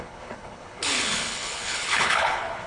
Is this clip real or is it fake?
fake